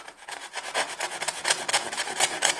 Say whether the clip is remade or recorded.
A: remade